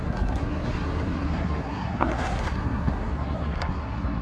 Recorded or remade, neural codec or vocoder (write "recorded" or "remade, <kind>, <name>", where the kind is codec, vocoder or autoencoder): remade, codec, SNAC